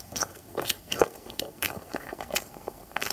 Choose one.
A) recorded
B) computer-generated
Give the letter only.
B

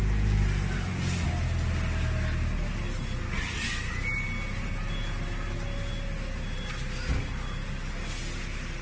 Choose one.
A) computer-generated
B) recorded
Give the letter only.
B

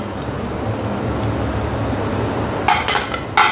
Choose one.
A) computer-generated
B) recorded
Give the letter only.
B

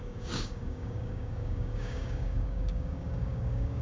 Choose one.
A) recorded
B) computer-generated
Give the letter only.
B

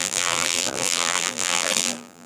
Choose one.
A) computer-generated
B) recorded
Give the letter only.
A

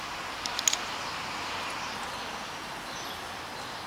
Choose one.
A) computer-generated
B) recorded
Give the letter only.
B